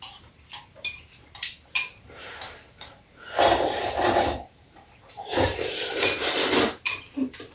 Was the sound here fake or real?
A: fake